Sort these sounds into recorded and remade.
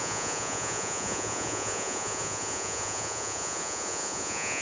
remade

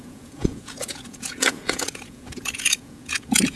remade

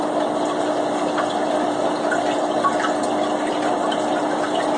recorded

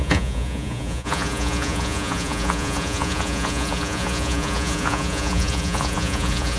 remade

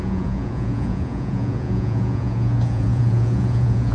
remade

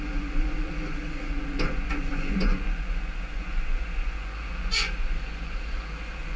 remade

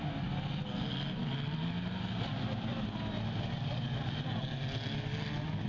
recorded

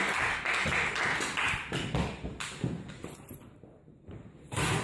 recorded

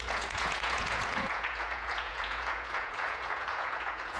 remade